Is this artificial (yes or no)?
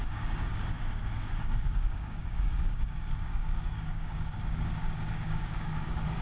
yes